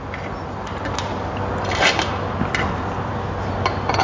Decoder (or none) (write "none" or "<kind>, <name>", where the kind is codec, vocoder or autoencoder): none